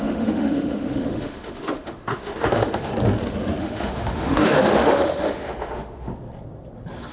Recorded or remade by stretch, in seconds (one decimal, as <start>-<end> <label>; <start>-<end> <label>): 0.0-2.9 remade; 2.9-3.6 recorded; 3.6-6.1 remade; 6.1-7.1 recorded